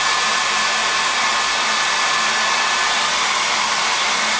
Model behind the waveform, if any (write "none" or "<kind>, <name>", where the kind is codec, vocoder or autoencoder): none